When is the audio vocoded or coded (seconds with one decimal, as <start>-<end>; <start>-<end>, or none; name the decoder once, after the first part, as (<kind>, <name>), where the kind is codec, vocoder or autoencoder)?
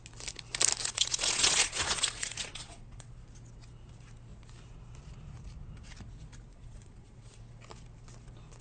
0.8-3.1 (vocoder, Vocos); 6.5-7.4